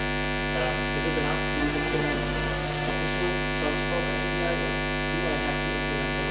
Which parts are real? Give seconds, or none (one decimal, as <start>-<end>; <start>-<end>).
0.0-1.6; 2.9-6.3